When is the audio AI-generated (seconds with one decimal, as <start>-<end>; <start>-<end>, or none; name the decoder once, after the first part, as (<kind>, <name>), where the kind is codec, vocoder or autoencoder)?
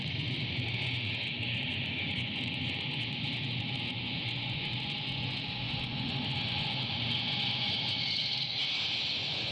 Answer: 0.0-8.6 (vocoder, Vocos); 9.1-9.5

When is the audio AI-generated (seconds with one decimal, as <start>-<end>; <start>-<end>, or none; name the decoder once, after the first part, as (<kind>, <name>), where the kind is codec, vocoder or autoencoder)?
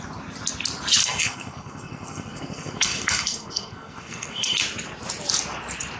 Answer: 1.0-4.6 (codec, SNAC)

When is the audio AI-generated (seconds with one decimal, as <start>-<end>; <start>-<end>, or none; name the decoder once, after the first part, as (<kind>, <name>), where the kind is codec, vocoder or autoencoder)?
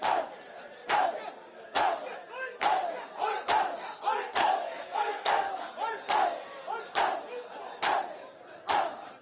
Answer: 4.4-5.7 (codec, SNAC)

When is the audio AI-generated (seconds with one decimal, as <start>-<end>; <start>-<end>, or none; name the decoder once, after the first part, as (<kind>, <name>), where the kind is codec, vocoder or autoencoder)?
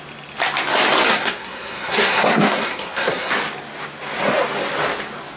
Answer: 1.1-3.3 (codec, SNAC)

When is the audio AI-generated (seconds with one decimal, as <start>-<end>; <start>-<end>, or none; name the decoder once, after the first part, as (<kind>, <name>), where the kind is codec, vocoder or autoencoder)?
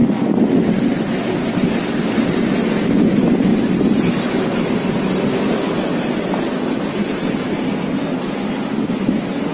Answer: none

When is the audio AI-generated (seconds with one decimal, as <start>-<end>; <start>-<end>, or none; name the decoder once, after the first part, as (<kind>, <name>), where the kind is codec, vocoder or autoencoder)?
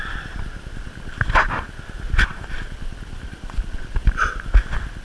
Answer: 2.3-4.6 (vocoder, BigVGAN v2)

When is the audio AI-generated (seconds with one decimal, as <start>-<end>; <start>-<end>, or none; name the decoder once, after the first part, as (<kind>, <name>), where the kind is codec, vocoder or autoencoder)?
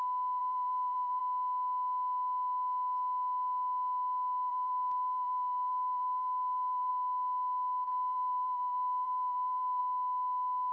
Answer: 0.4-1.2 (vocoder, BigVGAN v2); 4.5-6.9; 7.9-9.8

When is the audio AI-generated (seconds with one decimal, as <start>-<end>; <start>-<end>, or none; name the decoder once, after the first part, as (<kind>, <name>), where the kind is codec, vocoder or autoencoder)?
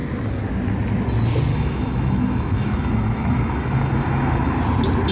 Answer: 1.5-4.6 (autoencoder, DAC-VAE)